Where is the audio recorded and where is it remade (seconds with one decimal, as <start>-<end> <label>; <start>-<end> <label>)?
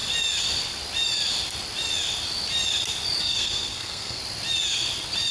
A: 0.0-3.2 recorded; 3.2-4.2 remade; 4.2-5.3 recorded